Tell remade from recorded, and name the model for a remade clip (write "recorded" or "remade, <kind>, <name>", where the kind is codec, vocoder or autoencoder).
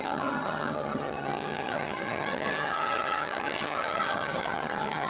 remade, vocoder, HiFi-GAN